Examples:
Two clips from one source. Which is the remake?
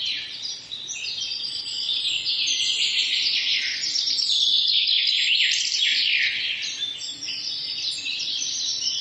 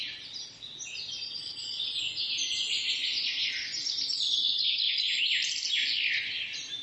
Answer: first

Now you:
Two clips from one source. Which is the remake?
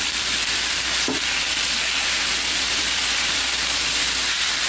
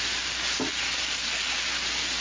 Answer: first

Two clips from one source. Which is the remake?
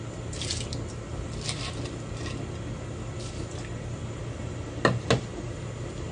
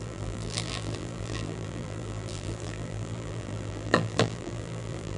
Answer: second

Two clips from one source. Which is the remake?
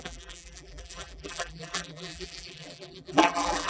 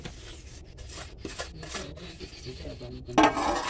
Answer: first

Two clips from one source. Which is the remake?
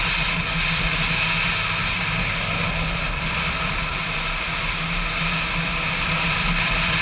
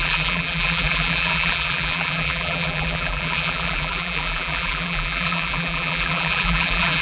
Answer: second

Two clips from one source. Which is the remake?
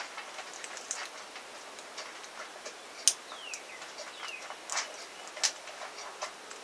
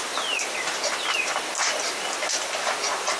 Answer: second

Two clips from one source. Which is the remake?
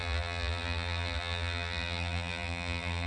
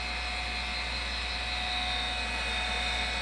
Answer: first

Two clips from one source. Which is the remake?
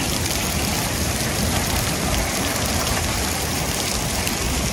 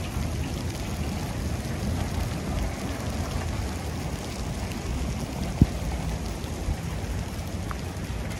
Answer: first